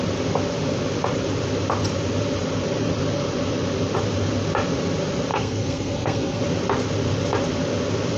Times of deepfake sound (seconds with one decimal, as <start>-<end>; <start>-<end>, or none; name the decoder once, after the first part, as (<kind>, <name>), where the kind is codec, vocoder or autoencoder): 5.3-6.4 (codec, SNAC)